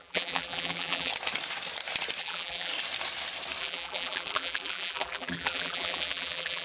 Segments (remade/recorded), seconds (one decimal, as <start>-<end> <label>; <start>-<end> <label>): 0.0-1.1 remade; 1.1-2.2 recorded; 2.2-2.7 remade; 2.7-3.6 recorded; 3.6-6.6 remade